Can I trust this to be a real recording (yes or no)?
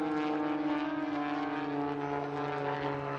yes